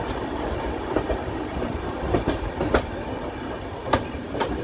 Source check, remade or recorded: recorded